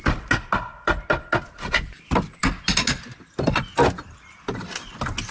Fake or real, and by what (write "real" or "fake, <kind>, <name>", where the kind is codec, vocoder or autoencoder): real